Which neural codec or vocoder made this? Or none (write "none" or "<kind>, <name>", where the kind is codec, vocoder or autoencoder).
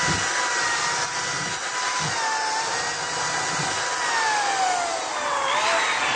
none